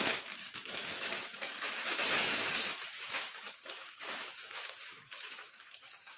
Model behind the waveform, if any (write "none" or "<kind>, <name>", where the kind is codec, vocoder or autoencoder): autoencoder, DAC-VAE